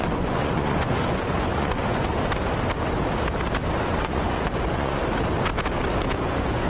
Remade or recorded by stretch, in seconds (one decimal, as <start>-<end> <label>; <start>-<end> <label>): 0.0-2.1 remade; 2.1-3.8 recorded; 3.8-5.0 remade; 5.0-6.2 recorded; 6.2-6.7 remade